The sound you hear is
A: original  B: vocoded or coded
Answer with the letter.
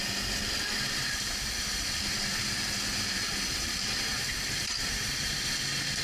A